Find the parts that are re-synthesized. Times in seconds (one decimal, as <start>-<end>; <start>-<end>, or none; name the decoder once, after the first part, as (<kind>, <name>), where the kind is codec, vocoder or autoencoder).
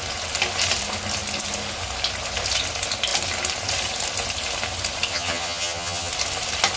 5.1-6.1 (vocoder, HiFi-GAN)